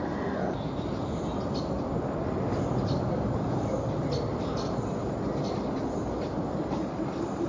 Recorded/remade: recorded